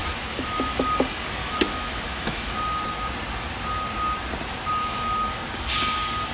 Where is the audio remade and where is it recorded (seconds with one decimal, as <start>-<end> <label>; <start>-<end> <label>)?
0.0-0.7 remade; 0.7-1.4 recorded; 1.4-2.5 remade; 2.5-4.8 recorded; 4.8-5.4 remade; 5.4-6.3 recorded